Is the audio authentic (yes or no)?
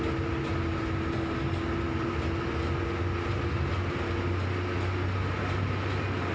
yes